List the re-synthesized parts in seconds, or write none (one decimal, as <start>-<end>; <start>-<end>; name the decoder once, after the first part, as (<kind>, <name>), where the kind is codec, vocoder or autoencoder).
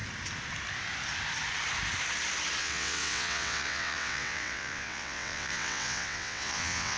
2.6-7.0 (vocoder, WaveNeXt)